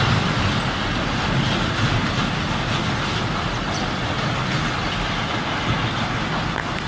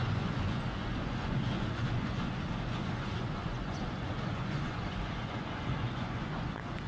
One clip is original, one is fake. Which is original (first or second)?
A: first